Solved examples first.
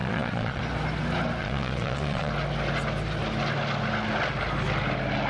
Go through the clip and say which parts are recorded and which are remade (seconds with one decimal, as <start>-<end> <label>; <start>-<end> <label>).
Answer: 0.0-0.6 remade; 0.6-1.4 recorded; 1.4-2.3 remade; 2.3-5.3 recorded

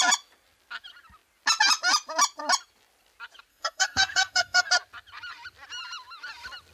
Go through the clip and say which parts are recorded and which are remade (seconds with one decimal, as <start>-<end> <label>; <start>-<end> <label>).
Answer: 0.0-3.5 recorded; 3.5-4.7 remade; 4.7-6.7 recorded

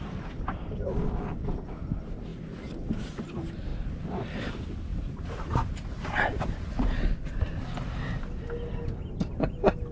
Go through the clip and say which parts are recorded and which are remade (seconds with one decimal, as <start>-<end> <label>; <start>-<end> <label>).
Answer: 0.0-4.9 recorded; 4.9-7.6 remade; 7.6-9.9 recorded

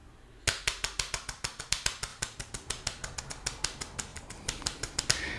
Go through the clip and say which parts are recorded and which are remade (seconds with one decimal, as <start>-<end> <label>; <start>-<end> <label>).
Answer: 0.0-4.1 recorded; 4.1-5.0 remade; 5.0-5.4 recorded

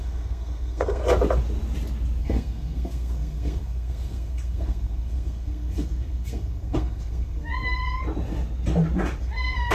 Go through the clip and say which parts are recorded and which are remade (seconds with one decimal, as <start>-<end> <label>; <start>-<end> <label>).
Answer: 0.0-1.0 remade; 1.0-2.2 recorded; 2.2-7.5 remade; 7.5-9.2 recorded; 9.2-9.7 remade

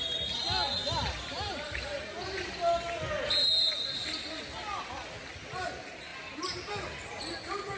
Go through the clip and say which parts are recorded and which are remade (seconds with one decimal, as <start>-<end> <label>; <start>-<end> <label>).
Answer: 0.0-0.8 recorded; 0.8-2.5 remade; 2.5-6.1 recorded; 6.1-6.7 remade; 6.7-7.8 recorded

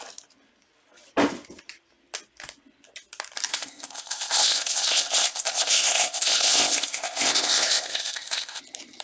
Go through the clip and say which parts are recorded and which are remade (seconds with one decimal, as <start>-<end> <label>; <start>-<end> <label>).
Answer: 0.0-3.5 recorded; 3.5-8.6 remade; 8.6-9.0 recorded